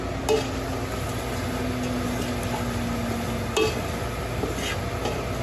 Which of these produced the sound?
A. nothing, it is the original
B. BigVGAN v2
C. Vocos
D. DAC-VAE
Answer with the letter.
A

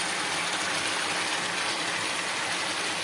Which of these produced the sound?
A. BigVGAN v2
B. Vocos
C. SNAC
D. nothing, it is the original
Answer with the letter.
D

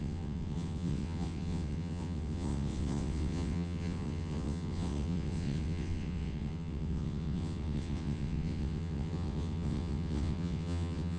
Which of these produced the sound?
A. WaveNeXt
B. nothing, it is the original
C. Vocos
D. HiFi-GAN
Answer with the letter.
A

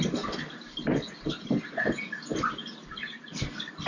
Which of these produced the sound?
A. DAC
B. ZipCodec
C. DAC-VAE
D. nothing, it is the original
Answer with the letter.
D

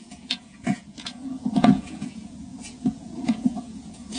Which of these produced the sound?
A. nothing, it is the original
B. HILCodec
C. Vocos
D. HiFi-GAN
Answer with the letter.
C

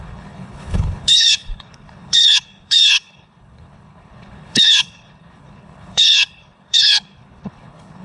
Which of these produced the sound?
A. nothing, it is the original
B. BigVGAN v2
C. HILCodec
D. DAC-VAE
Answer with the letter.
C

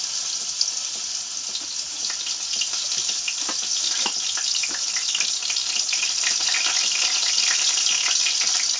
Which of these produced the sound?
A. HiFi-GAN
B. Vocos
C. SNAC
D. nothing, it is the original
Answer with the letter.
D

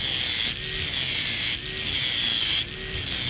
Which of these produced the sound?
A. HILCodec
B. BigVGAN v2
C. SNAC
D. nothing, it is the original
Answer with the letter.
D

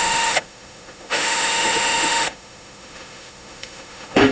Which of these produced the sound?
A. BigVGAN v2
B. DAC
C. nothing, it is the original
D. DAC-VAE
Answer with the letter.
D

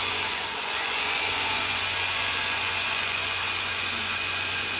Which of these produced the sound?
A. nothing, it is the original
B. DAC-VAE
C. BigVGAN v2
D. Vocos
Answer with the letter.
D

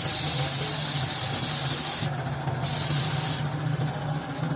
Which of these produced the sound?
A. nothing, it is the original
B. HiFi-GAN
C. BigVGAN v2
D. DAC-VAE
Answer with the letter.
A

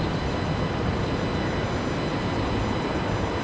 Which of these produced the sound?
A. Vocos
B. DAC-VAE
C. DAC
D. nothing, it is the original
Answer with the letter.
D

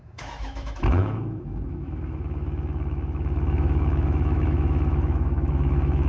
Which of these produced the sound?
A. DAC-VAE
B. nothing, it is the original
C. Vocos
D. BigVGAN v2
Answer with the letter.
A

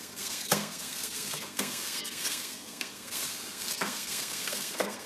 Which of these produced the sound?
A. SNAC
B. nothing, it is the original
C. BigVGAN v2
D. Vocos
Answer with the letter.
A